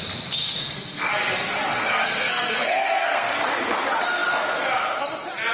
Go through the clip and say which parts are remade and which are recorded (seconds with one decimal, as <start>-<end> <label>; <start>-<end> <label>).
0.0-0.4 recorded; 0.4-1.1 remade; 1.1-1.7 recorded; 1.7-3.3 remade; 3.3-5.5 recorded